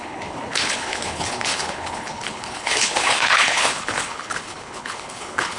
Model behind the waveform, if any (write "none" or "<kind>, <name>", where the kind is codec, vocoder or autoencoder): codec, HILCodec